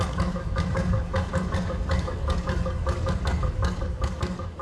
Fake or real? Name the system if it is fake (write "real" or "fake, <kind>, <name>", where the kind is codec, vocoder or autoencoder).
fake, codec, DAC